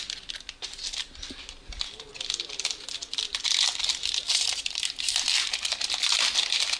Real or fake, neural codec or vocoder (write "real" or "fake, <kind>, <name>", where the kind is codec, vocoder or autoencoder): real